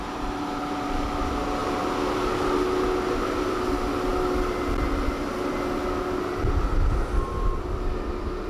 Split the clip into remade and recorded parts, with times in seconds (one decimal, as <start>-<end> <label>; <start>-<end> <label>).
0.0-8.5 recorded